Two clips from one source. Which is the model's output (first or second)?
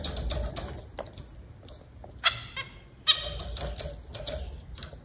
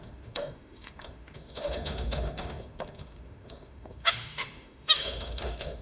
second